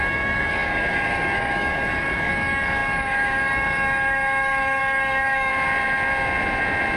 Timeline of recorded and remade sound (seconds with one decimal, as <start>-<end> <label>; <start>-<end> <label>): 0.0-5.5 remade; 5.5-7.0 recorded